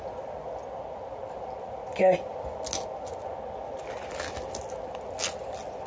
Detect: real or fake real